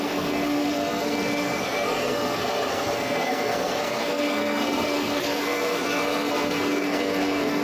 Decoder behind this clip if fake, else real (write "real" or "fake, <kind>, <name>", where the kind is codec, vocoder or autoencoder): fake, codec, SNAC